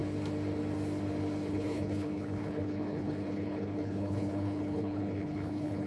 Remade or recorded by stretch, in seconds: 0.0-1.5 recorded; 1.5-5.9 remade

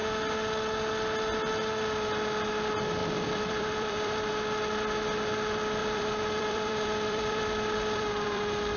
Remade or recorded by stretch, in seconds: 0.0-3.0 recorded; 3.0-4.3 remade; 4.3-5.8 recorded; 5.8-8.4 remade; 8.4-8.8 recorded